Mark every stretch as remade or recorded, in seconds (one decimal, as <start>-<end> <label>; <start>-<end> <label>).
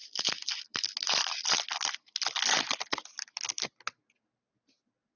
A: 0.0-5.2 recorded